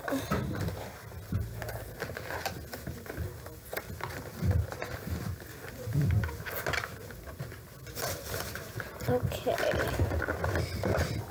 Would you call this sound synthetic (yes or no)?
no